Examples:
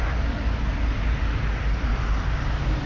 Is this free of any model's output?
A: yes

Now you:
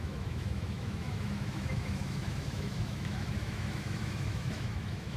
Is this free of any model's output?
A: no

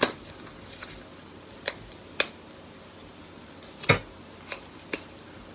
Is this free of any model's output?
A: yes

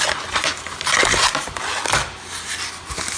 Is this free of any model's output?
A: yes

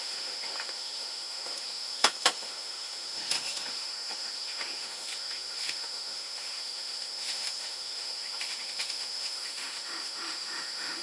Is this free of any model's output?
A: no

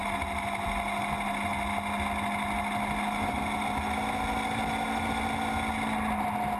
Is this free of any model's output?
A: yes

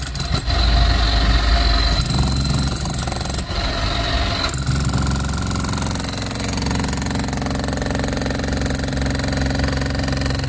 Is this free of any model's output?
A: yes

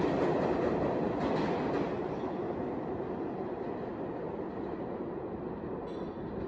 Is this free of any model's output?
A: yes